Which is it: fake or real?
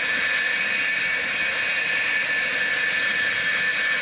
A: fake